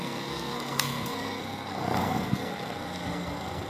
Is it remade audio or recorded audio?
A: remade